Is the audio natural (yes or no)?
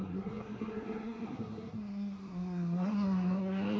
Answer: no